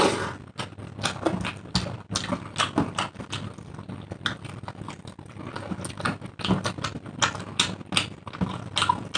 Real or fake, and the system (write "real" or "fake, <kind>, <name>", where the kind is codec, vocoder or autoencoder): real